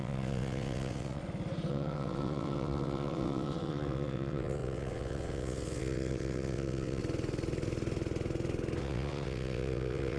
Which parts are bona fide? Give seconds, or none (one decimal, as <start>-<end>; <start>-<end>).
1.2-1.7; 7.0-8.8